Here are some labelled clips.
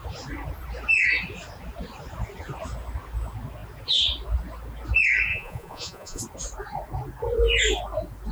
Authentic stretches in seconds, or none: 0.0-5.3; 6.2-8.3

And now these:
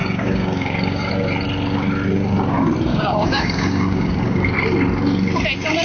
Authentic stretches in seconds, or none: 1.1-2.9; 4.5-5.8

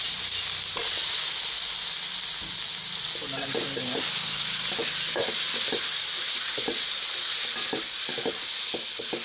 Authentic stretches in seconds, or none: 0.0-4.8; 8.3-9.2

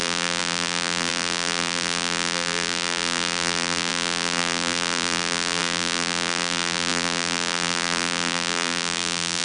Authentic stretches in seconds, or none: none

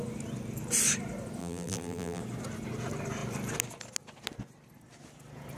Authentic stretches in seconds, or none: 0.0-1.4; 2.2-5.6

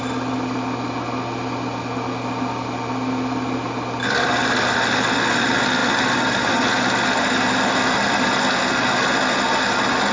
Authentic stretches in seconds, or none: 0.0-10.1

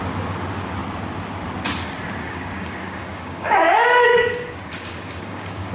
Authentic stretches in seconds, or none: 0.0-2.2

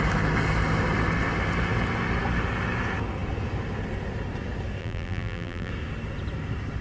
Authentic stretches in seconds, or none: 0.0-4.8; 5.7-6.8